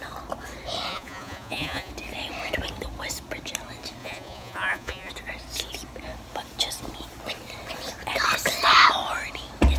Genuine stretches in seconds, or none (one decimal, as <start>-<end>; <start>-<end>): 0.0-0.9; 1.9-4.0; 5.1-9.8